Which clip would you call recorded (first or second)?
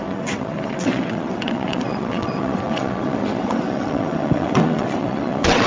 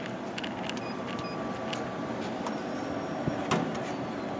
second